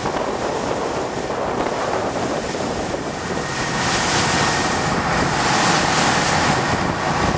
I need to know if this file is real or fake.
real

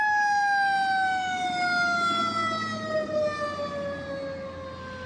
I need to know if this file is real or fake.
real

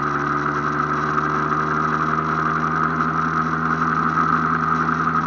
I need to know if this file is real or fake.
real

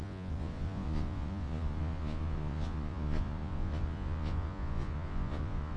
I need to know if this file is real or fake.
fake